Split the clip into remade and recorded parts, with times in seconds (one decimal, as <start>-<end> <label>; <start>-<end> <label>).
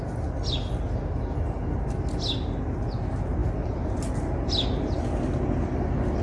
0.0-6.2 recorded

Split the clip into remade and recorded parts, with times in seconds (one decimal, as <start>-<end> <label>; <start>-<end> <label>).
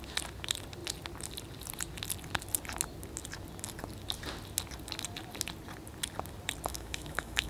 0.0-6.7 recorded; 6.7-7.5 remade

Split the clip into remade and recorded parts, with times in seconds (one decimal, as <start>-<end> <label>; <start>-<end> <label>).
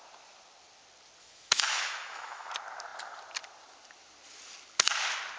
0.0-1.2 recorded; 1.2-2.5 remade; 2.5-5.4 recorded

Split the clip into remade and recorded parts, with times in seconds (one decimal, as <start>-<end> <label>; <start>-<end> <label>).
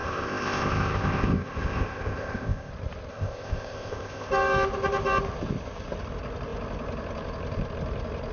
0.0-2.7 remade; 2.7-3.1 recorded; 3.1-4.3 remade; 4.3-8.3 recorded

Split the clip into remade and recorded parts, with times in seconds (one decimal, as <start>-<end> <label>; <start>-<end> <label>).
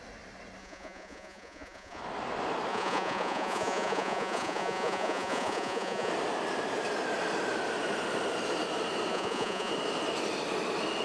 0.0-0.6 recorded; 0.6-2.0 remade; 2.0-2.7 recorded; 2.7-6.1 remade; 6.1-9.1 recorded; 9.1-9.7 remade; 9.7-11.0 recorded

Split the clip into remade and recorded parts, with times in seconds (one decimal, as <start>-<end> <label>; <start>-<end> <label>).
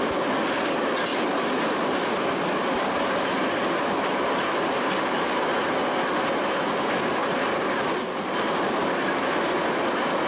0.0-1.1 recorded; 1.1-4.9 remade; 4.9-7.2 recorded; 7.2-9.2 remade; 9.2-10.3 recorded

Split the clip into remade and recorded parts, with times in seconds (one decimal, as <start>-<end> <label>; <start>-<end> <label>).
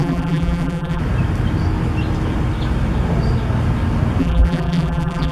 0.0-1.0 remade; 1.0-4.2 recorded; 4.2-5.3 remade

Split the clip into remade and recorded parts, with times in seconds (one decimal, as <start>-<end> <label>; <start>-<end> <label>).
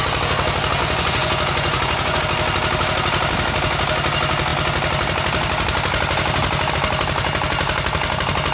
0.0-0.8 recorded; 0.8-2.2 remade; 2.2-8.5 recorded